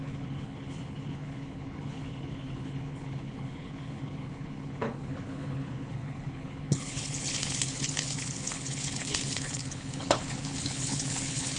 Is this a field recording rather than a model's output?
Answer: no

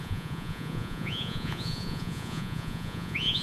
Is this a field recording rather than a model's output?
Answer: no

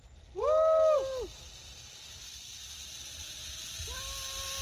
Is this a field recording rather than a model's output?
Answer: yes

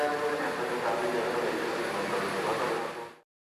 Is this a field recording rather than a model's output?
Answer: yes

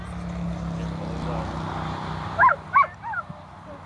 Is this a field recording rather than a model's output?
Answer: yes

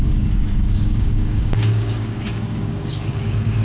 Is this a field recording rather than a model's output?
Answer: no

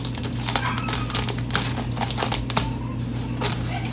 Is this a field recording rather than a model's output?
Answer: yes